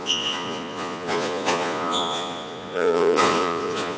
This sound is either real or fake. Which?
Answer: fake